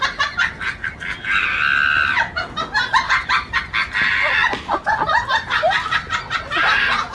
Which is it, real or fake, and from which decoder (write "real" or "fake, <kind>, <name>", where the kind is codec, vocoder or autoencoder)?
real